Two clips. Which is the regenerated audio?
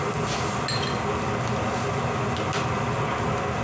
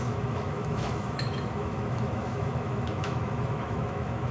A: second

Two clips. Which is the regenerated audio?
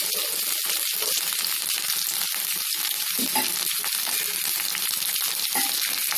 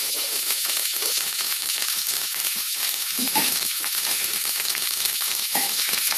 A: second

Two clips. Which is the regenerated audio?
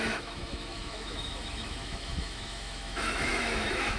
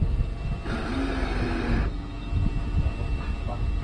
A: first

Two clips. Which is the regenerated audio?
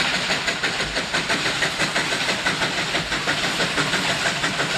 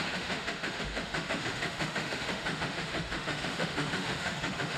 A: second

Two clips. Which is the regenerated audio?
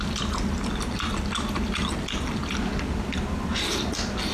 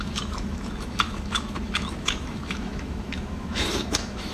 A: second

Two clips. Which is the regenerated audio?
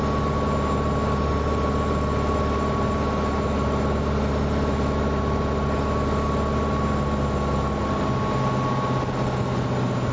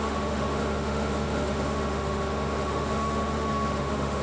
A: second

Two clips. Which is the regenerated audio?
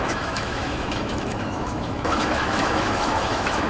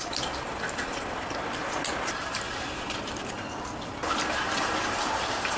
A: first